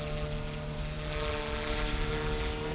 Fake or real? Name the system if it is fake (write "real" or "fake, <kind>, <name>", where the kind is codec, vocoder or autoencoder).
real